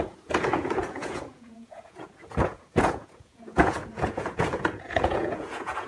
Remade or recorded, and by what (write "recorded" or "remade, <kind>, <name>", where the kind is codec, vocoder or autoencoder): remade, vocoder, Vocos